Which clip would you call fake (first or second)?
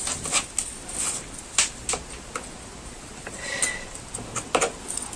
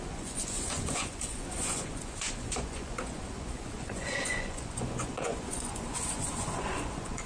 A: second